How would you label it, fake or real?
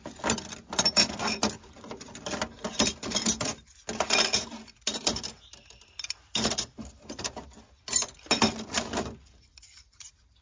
real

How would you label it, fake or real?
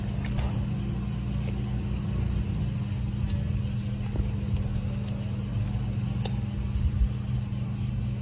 real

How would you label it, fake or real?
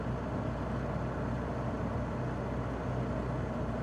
real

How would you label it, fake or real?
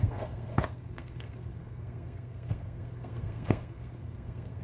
fake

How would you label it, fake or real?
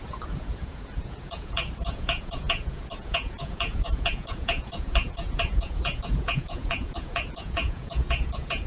fake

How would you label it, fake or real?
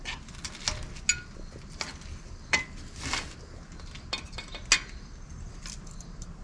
real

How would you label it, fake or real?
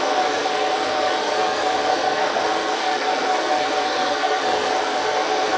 fake